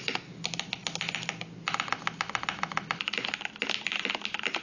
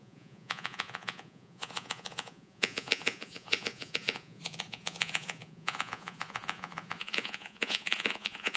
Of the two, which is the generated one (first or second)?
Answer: second